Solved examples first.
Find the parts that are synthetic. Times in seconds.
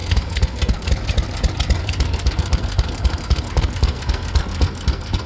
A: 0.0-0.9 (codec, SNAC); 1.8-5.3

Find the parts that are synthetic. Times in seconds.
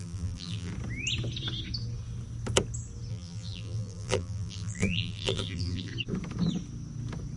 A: 0.0-0.7 (vocoder, BigVGAN v2); 3.1-5.9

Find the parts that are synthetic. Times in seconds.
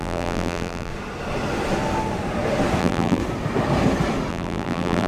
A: 0.0-0.9 (vocoder, BigVGAN v2); 2.8-3.2; 4.3-5.1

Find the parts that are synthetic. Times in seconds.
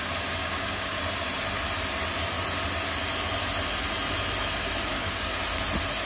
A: 0.4-1.0 (codec, DAC); 4.9-5.4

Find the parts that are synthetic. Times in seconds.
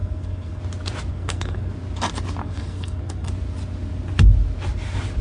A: 0.0-0.6 (codec, SNAC); 1.1-1.7; 2.4-3.3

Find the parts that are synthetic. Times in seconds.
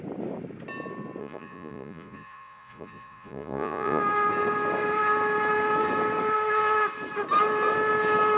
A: 1.2-4.0 (vocoder, Vocos)